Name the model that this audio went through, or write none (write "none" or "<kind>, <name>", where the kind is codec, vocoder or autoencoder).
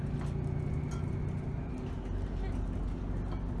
none